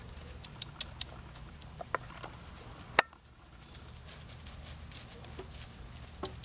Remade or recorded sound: recorded